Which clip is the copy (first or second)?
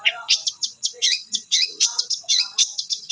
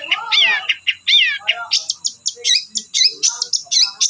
first